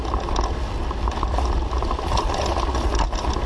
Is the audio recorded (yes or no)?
yes